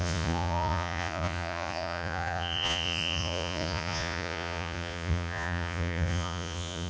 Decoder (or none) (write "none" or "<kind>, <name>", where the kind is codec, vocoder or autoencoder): vocoder, Vocos